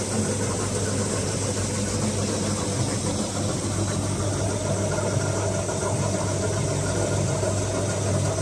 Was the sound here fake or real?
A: real